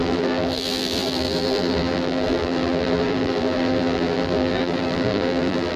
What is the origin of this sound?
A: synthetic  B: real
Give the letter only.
A